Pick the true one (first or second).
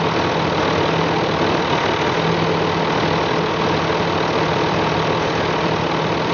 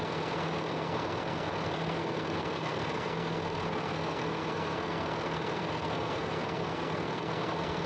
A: first